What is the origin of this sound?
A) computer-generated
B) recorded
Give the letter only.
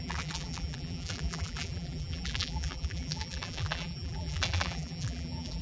A